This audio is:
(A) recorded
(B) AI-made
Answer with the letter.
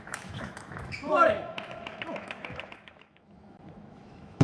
B